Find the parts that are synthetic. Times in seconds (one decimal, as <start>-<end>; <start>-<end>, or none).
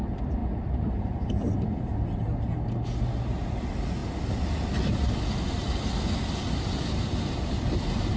none